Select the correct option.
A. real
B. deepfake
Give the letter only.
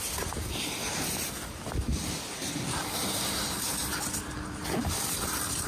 A